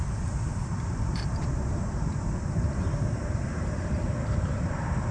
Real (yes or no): no